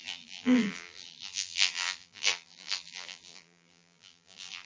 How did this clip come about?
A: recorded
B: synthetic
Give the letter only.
B